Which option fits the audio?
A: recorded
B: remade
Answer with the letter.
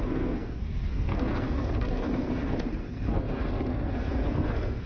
B